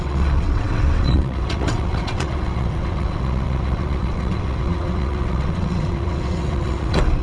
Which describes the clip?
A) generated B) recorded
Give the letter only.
A